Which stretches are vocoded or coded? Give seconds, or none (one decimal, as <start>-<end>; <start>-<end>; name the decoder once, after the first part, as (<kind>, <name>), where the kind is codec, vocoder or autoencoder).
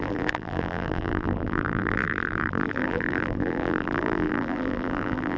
0.0-5.4 (vocoder, BigVGAN v2)